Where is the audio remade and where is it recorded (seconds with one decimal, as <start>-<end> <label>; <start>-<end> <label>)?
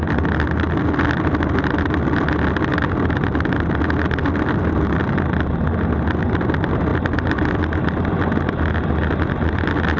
0.0-10.0 recorded